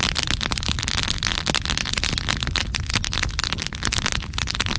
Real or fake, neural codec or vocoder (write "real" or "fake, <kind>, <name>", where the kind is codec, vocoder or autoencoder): real